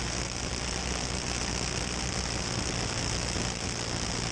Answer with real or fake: real